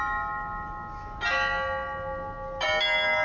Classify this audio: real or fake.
real